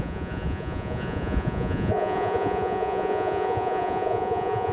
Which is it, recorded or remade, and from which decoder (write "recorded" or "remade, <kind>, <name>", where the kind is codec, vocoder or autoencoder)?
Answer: remade, vocoder, Vocos